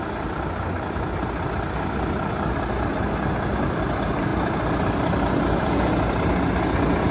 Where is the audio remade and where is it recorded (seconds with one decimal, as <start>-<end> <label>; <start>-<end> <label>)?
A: 0.0-7.1 recorded